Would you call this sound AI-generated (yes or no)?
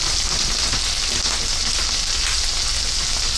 no